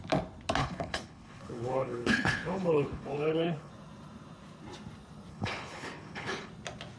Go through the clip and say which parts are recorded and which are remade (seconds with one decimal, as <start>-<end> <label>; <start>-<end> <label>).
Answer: 0.0-0.6 recorded; 0.6-3.7 remade; 3.7-5.3 recorded; 5.3-6.5 remade; 6.5-7.0 recorded